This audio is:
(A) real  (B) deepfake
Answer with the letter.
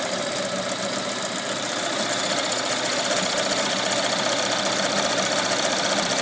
A